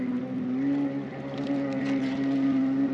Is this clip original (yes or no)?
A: yes